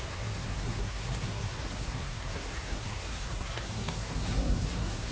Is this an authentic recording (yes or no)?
no